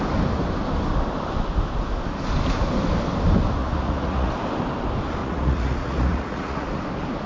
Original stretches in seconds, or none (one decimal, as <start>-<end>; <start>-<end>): 0.0-3.6; 4.3-5.2; 6.8-7.3

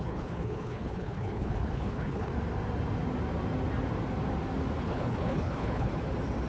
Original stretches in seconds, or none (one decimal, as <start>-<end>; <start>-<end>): 2.3-4.8; 5.9-6.5